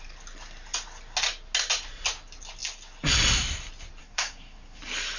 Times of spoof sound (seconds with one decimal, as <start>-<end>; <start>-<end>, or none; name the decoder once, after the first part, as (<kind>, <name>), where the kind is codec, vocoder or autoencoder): 4.0-4.8 (codec, SNAC)